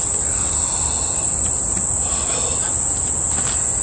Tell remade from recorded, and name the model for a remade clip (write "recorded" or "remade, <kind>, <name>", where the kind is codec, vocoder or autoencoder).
recorded